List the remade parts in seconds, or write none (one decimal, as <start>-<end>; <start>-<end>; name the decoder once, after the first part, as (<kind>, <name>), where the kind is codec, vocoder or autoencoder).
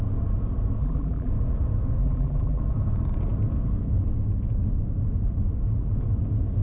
0.8-1.3 (vocoder, BigVGAN v2); 2.0-2.6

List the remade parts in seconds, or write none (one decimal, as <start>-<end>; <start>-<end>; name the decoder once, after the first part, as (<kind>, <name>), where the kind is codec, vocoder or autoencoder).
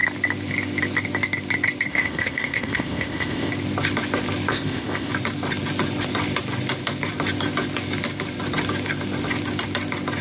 1.9-3.5 (codec, ZipCodec); 4.5-5.1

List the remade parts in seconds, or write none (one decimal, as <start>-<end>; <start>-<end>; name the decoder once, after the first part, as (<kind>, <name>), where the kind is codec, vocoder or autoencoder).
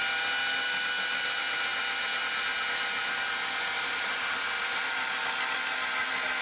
none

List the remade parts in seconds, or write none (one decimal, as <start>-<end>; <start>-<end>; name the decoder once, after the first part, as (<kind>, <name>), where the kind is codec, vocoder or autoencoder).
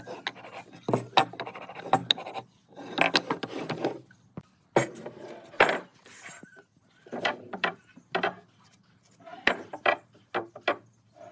5.9-8.0 (vocoder, BigVGAN v2)